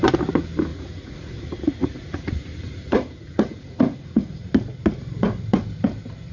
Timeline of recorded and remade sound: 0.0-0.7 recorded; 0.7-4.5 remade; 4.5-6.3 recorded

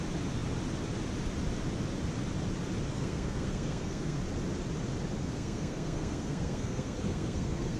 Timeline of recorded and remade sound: 0.0-2.9 recorded; 2.9-4.2 remade; 4.2-5.2 recorded; 5.2-7.8 remade

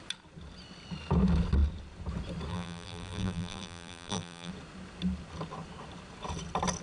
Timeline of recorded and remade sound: 0.0-2.5 recorded; 2.5-4.5 remade; 4.5-6.8 recorded

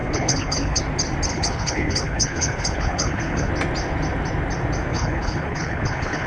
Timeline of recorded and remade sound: 0.0-0.8 remade; 0.8-1.3 recorded; 1.3-3.5 remade; 3.5-4.9 recorded; 4.9-6.3 remade

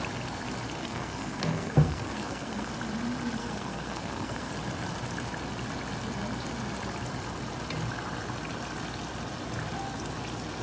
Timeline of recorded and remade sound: 0.0-0.8 recorded; 0.8-2.7 remade; 2.7-3.4 recorded; 3.4-4.5 remade; 4.5-10.6 recorded

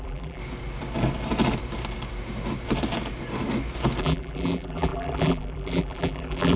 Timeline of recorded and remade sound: 0.0-0.4 remade; 0.4-4.0 recorded; 4.0-6.6 remade